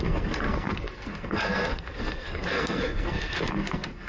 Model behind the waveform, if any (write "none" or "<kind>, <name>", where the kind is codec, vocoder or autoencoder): codec, SNAC